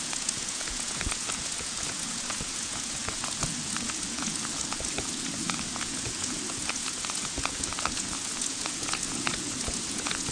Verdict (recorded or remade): remade